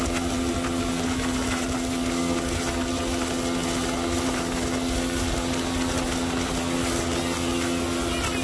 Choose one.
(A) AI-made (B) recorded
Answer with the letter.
B